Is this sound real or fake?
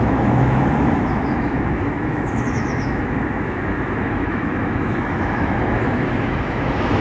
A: fake